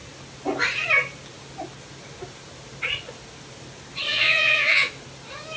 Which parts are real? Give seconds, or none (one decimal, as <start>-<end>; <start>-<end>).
0.0-4.1; 4.9-5.6